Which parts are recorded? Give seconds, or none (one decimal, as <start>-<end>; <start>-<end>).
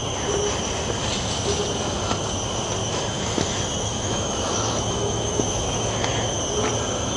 0.0-2.8; 6.4-7.2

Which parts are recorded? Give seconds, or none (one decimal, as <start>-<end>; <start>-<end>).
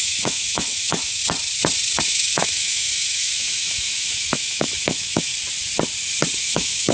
1.2-2.1; 5.3-6.4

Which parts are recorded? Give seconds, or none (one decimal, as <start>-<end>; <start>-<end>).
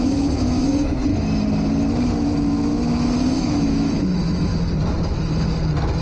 1.1-3.4; 4.5-6.0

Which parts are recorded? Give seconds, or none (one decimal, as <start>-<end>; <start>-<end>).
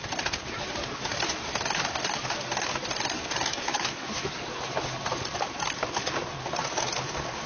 0.0-3.5; 4.1-7.5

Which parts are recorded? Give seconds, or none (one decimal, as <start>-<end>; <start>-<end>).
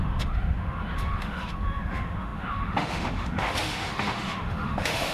none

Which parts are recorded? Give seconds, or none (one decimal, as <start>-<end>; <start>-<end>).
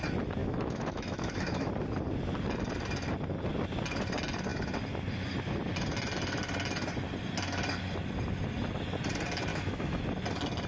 0.0-0.4; 1.7-9.5; 10.0-10.7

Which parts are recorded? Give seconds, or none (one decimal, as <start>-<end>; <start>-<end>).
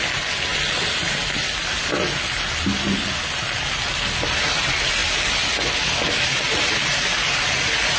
0.0-8.0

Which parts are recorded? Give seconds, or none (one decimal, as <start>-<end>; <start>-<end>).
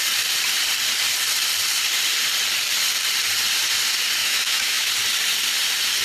0.0-4.2; 4.9-6.0